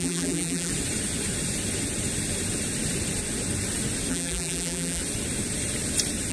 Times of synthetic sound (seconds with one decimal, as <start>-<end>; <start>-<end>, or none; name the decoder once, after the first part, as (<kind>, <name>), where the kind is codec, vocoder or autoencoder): 0.0-0.7 (vocoder, BigVGAN v2); 4.1-5.0

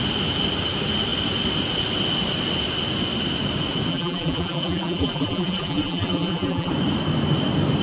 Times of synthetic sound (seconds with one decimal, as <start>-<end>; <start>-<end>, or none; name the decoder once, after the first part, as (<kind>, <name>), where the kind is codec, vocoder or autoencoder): 3.9-6.7 (vocoder, BigVGAN v2)

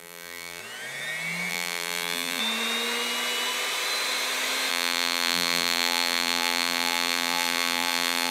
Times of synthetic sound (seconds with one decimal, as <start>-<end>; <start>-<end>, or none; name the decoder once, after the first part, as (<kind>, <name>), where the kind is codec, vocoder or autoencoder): 0.0-0.6 (vocoder, BigVGAN v2); 1.5-2.4; 4.7-8.3

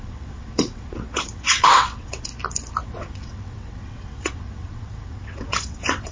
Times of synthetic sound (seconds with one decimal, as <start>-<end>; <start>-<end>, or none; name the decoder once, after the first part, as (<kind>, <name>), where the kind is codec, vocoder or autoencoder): 0.0-2.3 (vocoder, WaveNeXt); 2.8-6.1